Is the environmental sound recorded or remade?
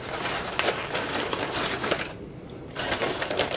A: recorded